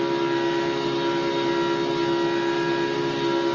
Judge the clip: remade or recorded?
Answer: recorded